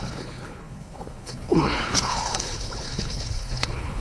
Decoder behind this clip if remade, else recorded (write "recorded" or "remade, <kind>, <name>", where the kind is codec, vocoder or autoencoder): remade, codec, HILCodec